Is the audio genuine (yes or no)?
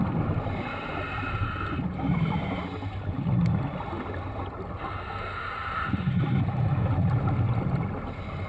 yes